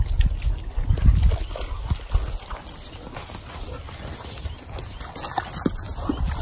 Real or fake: real